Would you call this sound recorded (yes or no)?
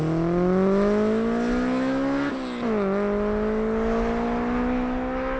yes